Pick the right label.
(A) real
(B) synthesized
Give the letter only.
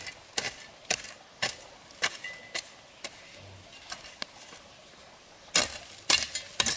A